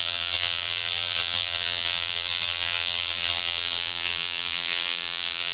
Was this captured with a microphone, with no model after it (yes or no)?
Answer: no